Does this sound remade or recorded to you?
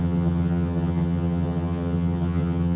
remade